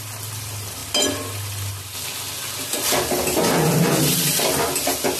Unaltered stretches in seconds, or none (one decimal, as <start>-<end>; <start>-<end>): 0.0-5.2